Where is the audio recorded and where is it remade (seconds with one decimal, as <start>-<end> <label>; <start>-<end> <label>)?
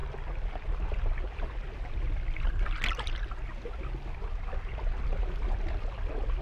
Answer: 0.0-6.4 recorded